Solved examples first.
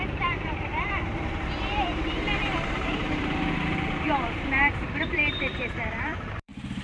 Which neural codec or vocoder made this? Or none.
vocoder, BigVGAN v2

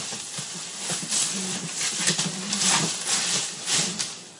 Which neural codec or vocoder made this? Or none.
vocoder, BigVGAN v2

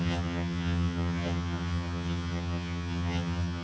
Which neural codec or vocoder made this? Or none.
vocoder, HiFi-GAN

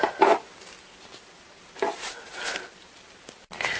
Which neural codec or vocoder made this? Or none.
none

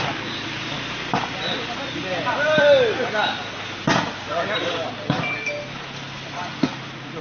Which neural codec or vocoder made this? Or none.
none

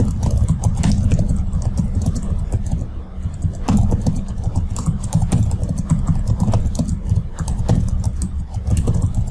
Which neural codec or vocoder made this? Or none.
none